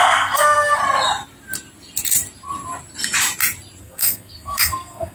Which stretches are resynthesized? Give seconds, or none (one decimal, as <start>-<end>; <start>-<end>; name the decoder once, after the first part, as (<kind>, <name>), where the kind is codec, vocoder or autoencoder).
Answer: 0.0-0.8 (codec, SNAC); 3.8-5.1